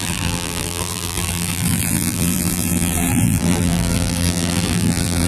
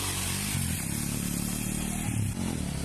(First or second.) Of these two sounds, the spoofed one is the first